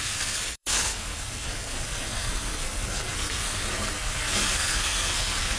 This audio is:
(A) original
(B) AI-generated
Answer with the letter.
B